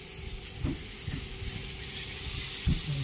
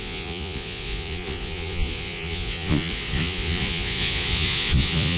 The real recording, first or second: first